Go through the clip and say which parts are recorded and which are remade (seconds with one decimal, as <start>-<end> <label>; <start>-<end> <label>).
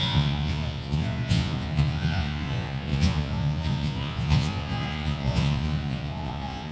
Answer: 0.0-6.7 remade